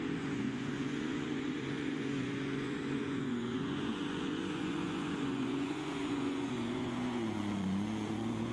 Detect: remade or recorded remade